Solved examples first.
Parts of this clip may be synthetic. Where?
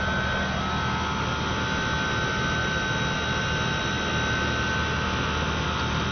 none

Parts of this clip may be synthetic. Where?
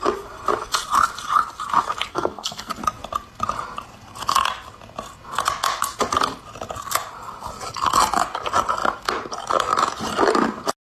2.1-2.7 (codec, SNAC)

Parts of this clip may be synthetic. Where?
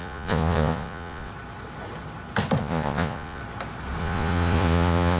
0.0-1.3 (vocoder, Vocos); 2.6-3.4; 4.0-5.2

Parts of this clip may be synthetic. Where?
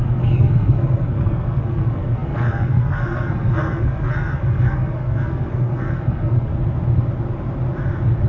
0.0-6.5 (codec, SNAC)